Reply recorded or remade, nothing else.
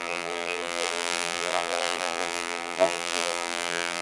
remade